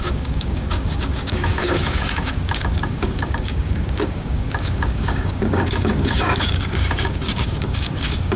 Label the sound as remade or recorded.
remade